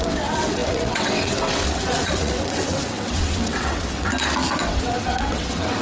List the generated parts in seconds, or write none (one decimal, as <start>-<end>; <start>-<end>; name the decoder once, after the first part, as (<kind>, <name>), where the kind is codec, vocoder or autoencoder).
0.0-4.1 (vocoder, WaveNeXt); 4.6-5.8